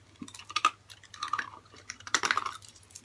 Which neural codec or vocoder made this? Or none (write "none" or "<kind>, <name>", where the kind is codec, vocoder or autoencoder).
vocoder, BigVGAN v2